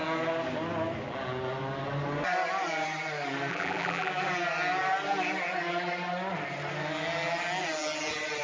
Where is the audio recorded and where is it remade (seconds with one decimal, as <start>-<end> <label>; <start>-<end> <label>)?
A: 0.0-3.5 recorded; 3.5-4.1 remade; 4.1-8.4 recorded